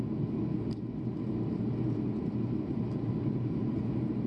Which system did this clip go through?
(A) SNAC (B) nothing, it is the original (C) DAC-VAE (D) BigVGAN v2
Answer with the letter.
B